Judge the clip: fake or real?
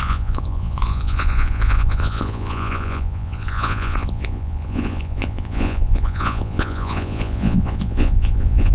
fake